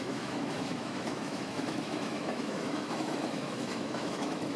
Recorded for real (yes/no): no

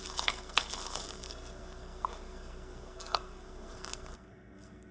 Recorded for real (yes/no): no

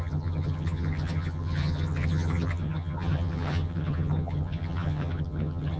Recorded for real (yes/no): no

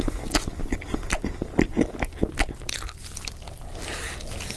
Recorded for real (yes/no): yes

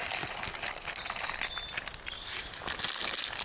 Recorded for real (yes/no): yes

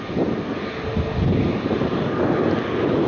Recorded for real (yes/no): yes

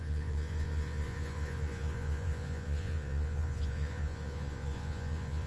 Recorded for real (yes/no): no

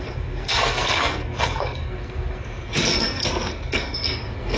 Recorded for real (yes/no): no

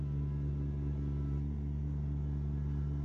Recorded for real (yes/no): yes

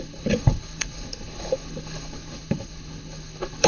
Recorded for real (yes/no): no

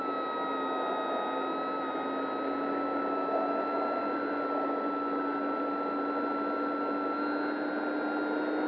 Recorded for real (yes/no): yes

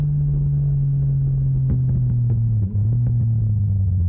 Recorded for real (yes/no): yes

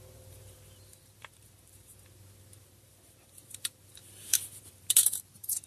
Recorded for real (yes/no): no